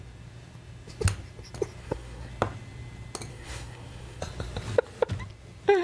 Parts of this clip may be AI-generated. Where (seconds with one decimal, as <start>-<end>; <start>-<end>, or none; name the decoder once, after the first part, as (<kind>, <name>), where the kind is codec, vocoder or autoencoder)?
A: 1.8-2.3 (codec, SNAC); 3.3-4.2